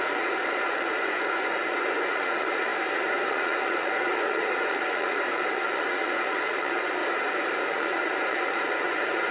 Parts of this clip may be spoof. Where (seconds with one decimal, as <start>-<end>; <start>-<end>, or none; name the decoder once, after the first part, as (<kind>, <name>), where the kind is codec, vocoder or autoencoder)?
0.0-7.0 (vocoder, Vocos); 7.7-9.3